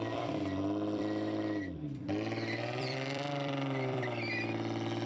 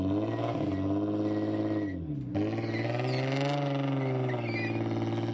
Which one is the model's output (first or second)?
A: first